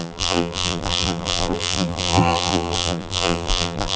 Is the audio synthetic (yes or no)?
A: yes